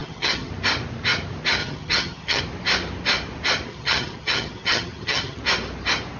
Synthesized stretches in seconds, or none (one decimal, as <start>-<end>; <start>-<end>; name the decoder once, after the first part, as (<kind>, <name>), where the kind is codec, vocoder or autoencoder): 0.0-0.5 (vocoder, HiFi-GAN); 1.6-2.4; 3.7-5.4